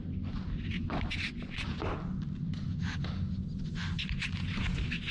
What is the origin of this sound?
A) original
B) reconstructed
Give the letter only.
A